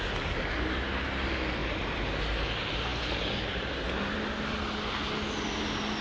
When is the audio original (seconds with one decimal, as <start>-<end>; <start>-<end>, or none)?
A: 0.0-1.6; 2.2-6.0